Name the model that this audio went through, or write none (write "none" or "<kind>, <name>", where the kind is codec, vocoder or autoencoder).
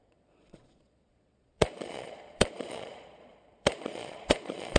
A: vocoder, Vocos